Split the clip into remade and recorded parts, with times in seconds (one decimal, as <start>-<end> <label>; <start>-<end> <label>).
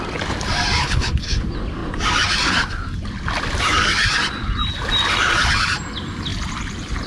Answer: 0.0-0.8 recorded; 0.8-1.4 remade; 1.4-7.1 recorded